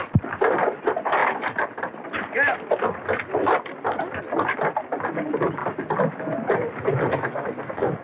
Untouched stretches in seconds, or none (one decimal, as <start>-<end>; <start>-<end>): 0.0-7.0